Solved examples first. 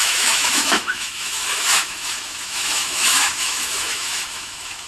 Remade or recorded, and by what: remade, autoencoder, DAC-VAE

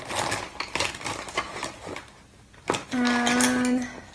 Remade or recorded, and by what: recorded